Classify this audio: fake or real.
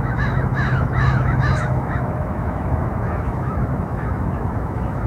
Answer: fake